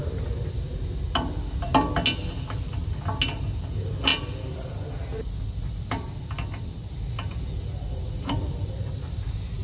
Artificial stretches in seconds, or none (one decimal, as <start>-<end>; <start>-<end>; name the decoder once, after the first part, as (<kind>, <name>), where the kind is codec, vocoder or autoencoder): none